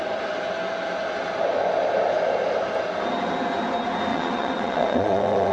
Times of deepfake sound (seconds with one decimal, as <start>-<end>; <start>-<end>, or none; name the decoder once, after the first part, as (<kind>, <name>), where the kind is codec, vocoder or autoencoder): 4.1-5.5 (vocoder, WaveNeXt)